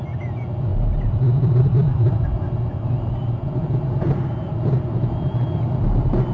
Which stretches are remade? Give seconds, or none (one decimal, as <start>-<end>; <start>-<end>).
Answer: none